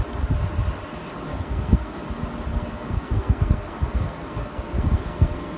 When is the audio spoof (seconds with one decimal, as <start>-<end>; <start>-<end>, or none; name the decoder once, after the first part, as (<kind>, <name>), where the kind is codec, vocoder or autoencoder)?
1.3-2.0 (codec, SNAC); 2.5-5.6